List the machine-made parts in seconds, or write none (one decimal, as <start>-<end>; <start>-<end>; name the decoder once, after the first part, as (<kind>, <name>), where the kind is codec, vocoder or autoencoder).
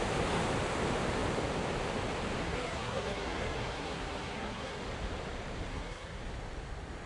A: 2.4-4.8 (codec, SNAC); 5.7-6.2